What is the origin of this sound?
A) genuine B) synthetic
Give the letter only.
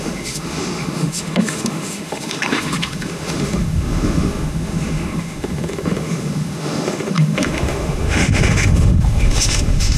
B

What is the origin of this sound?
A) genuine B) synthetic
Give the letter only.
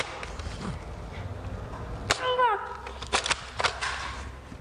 A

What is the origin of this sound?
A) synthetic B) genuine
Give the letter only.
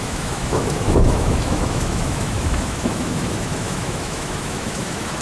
A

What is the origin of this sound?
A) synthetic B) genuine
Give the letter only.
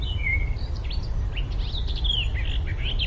A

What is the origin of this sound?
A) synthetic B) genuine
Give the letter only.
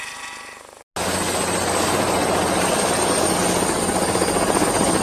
B